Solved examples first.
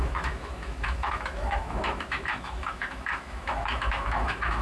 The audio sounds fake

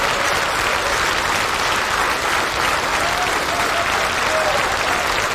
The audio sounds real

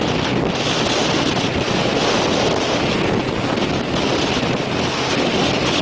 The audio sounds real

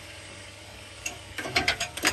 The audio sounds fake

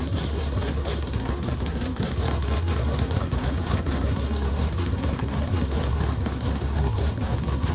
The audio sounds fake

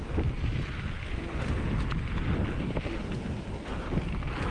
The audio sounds real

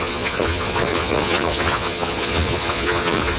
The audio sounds fake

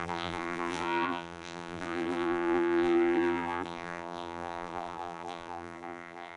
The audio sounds fake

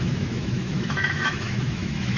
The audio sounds fake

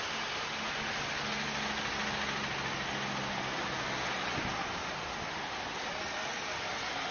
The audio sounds real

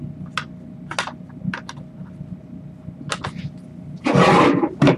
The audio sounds real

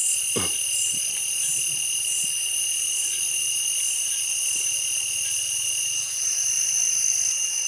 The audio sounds real